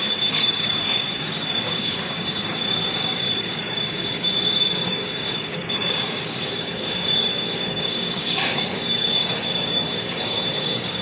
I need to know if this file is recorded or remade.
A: remade